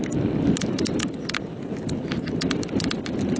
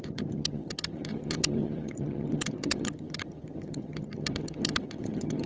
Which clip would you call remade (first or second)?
second